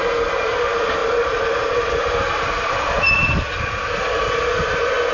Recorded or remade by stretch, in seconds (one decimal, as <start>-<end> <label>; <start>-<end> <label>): 0.0-1.0 recorded; 1.0-4.1 remade; 4.1-5.1 recorded